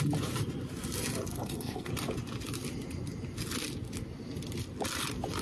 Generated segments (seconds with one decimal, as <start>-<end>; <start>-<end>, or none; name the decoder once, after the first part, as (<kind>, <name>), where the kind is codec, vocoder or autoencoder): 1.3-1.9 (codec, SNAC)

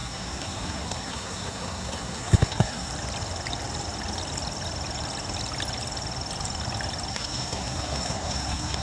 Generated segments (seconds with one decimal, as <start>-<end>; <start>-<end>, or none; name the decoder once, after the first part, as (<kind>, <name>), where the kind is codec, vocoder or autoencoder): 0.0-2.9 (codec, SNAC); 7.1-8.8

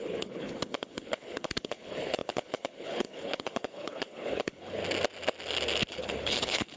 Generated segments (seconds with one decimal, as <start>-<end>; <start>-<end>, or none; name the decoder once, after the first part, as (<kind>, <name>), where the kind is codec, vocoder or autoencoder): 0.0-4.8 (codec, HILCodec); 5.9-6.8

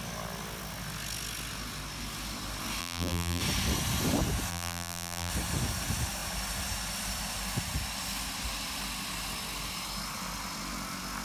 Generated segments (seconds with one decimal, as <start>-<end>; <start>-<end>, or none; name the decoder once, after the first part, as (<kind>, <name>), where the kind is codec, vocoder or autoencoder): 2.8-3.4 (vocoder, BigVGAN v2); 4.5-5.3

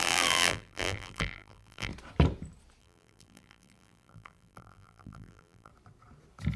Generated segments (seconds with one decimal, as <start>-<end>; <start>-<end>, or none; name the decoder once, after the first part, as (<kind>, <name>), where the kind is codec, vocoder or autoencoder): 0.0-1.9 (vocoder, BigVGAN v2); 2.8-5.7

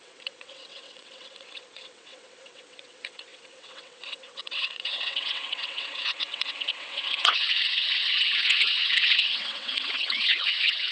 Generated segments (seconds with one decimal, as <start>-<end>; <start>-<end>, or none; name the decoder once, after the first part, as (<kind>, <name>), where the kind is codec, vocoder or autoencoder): 0.0-10.9 (vocoder, WaveNeXt)

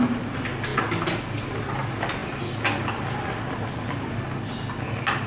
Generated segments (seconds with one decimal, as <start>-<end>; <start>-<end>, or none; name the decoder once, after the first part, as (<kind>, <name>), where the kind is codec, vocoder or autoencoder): none

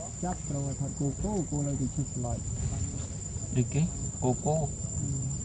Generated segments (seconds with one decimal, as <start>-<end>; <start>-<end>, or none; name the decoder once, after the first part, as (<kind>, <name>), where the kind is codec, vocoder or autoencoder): none